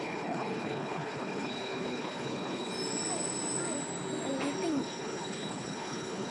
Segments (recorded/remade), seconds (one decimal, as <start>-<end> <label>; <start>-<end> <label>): 0.0-2.7 remade; 2.7-4.7 recorded; 4.7-6.3 remade